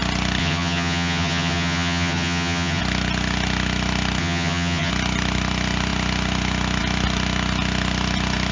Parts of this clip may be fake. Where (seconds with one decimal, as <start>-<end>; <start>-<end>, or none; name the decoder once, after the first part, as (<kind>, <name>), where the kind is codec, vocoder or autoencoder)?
0.4-2.8 (vocoder, HiFi-GAN); 4.2-4.9